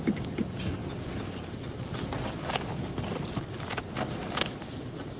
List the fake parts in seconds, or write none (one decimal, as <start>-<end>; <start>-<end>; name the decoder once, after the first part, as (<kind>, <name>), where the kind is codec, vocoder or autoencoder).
none